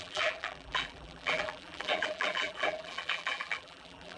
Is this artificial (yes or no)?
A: yes